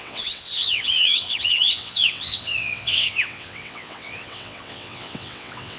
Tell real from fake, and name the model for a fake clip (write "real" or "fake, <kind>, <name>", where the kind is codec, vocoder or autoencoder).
fake, vocoder, WaveNeXt